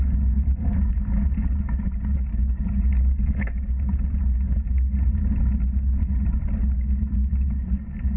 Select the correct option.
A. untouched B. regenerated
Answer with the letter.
A